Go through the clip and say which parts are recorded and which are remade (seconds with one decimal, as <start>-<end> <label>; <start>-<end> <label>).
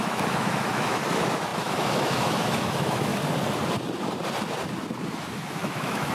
0.0-3.1 remade; 3.1-5.1 recorded; 5.1-6.1 remade